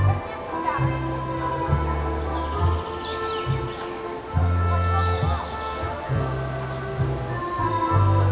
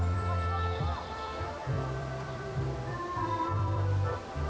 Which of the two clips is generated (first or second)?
second